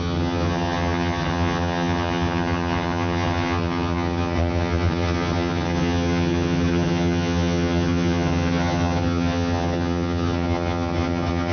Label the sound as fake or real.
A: fake